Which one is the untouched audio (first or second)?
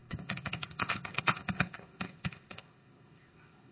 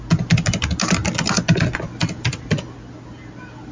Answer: second